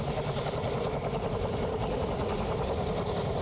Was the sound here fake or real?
fake